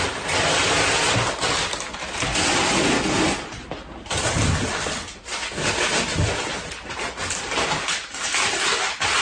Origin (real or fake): real